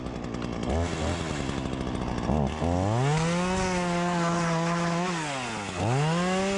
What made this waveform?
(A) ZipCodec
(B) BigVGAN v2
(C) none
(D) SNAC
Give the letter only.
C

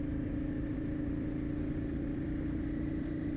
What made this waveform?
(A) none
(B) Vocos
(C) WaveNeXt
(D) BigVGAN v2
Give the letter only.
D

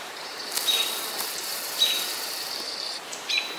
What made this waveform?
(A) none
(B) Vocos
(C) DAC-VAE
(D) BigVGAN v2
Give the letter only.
D